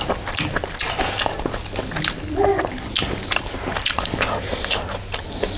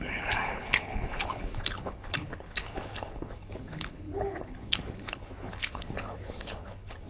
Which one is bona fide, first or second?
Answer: first